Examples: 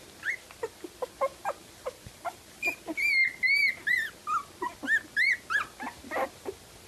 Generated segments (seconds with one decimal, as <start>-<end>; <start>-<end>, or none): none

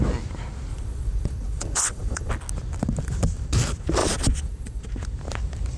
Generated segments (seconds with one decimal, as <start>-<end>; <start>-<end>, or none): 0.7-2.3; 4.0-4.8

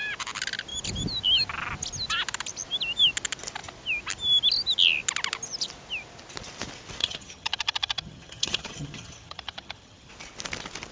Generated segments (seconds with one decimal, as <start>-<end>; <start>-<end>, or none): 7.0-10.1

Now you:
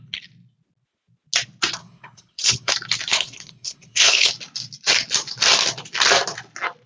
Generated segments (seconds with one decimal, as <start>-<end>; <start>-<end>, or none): 1.8-2.7; 3.1-4.3

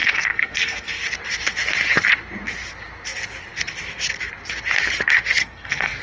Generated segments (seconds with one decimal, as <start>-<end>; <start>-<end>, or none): 0.0-0.9; 5.4-6.0

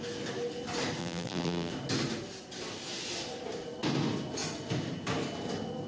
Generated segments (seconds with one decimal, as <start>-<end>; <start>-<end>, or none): 1.0-1.7

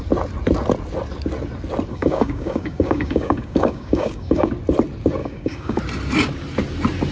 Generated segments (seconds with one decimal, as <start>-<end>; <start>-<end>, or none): 1.9-4.5; 5.2-5.8